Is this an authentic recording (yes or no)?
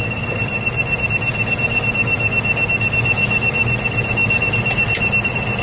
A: yes